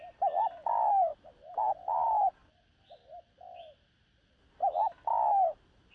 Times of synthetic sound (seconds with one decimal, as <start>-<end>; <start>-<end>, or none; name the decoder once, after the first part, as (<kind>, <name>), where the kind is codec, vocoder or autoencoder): none

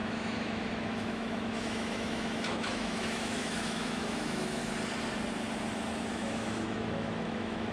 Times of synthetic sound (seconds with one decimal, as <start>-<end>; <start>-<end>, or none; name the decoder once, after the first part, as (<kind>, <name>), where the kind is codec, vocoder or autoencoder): 0.0-4.6 (autoencoder, DAC-VAE); 6.1-7.7

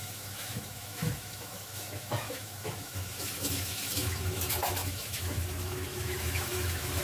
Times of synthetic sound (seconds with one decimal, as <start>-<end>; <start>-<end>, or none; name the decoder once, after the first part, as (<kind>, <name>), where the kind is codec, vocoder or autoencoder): 0.0-7.0 (autoencoder, DAC-VAE)

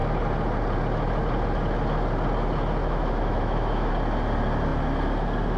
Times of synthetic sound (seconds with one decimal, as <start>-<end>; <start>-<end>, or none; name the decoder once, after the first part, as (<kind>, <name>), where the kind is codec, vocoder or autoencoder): 2.8-3.9 (autoencoder, DAC-VAE)

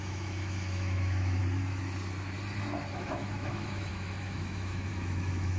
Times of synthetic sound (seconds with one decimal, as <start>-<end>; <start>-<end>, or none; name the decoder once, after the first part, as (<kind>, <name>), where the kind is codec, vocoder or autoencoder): 0.0-1.4 (autoencoder, DAC-VAE); 2.9-5.6